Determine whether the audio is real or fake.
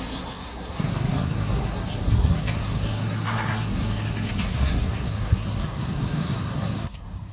fake